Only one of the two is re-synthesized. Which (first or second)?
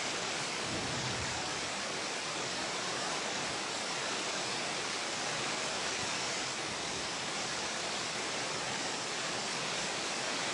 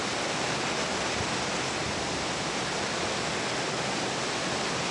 first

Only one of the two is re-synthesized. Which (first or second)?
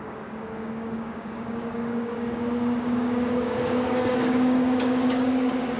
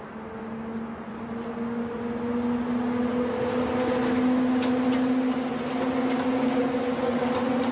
first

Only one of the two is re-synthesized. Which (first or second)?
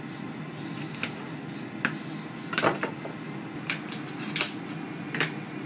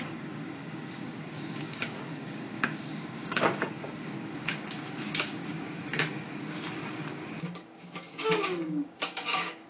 second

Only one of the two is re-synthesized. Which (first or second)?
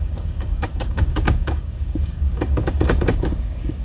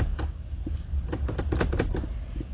first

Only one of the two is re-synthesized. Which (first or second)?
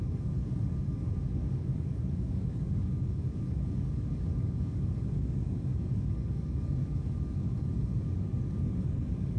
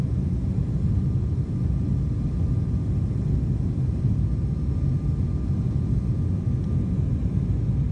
first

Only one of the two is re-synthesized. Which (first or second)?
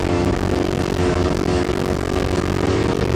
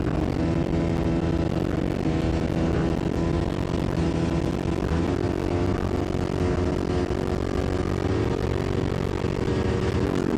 first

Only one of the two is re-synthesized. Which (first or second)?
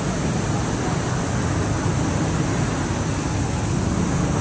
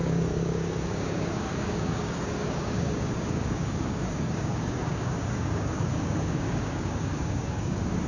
second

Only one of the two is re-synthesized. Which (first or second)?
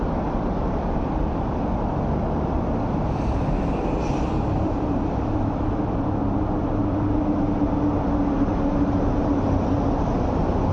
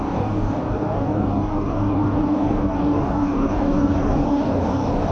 second